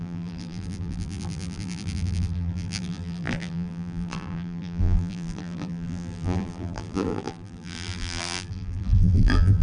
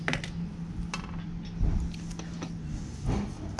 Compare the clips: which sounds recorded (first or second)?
second